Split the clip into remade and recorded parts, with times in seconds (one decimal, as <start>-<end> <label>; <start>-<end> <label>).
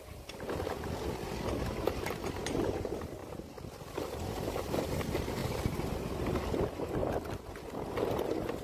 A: 0.0-8.6 recorded